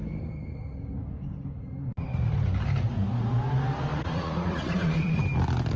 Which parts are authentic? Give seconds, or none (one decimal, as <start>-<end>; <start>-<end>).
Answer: 0.0-3.9; 5.2-5.8